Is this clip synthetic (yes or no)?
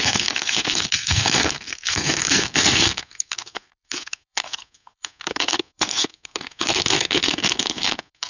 yes